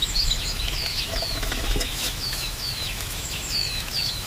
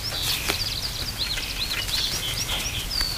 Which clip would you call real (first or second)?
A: second